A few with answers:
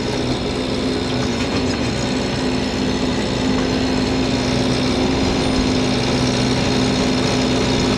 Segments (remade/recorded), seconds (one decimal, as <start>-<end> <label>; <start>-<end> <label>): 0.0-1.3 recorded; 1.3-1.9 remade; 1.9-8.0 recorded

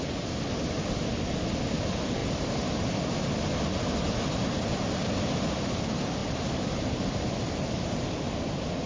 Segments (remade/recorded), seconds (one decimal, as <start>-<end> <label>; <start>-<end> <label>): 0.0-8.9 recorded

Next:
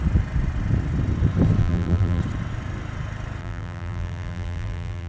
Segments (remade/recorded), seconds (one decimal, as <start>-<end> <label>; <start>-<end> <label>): 0.0-1.6 recorded; 1.6-2.2 remade; 2.2-3.4 recorded; 3.4-5.1 remade

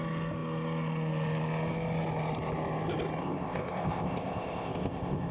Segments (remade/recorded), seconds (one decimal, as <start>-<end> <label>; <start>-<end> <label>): 0.0-3.2 recorded; 3.2-5.3 remade

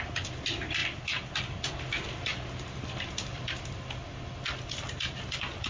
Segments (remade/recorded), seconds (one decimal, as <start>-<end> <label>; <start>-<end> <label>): 0.0-0.8 recorded; 0.8-1.4 remade; 1.4-2.3 recorded; 2.3-4.2 remade; 4.2-5.7 recorded